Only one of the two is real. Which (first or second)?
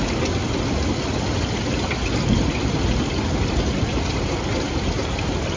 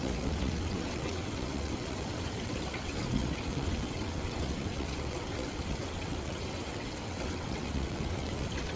first